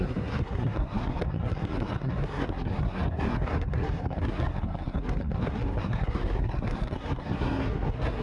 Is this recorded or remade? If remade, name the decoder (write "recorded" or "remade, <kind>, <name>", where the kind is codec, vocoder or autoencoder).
remade, codec, SNAC